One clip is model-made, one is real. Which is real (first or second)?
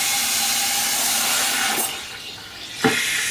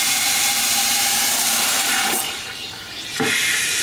first